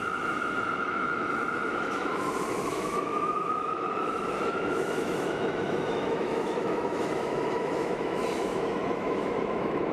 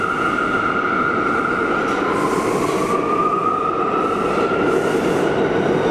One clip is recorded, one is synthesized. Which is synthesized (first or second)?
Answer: first